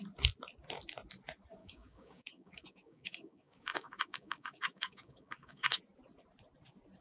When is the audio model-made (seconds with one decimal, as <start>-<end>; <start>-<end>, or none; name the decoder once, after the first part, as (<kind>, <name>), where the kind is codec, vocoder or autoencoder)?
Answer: 1.6-5.8 (codec, DAC)